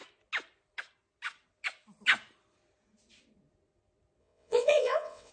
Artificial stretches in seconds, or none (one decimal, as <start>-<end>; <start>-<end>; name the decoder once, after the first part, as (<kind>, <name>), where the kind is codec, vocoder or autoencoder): 4.2-5.3 (vocoder, WaveNeXt)